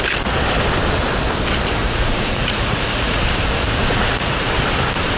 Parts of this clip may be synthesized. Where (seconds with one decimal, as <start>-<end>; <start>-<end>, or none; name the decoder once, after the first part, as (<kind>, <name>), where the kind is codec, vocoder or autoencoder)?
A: 1.8-3.2 (vocoder, Vocos); 3.9-4.5